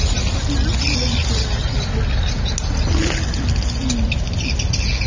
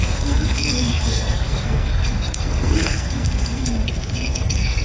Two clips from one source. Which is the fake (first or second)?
second